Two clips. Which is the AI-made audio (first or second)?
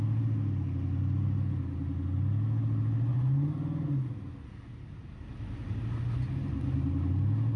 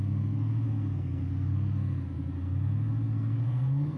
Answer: second